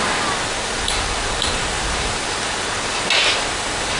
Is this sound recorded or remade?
recorded